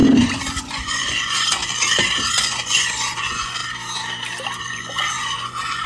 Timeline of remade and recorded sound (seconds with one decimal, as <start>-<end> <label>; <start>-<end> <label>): 0.0-0.6 recorded; 0.6-1.6 remade; 1.6-2.4 recorded; 2.4-3.6 remade; 3.6-4.6 recorded; 4.6-5.9 remade